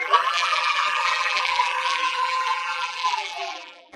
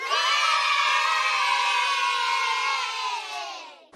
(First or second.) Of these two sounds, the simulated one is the first